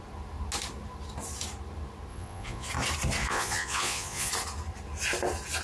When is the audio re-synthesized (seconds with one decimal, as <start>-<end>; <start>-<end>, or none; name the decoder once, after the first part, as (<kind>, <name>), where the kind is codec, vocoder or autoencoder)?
2.1-2.7 (vocoder, Vocos); 3.2-4.3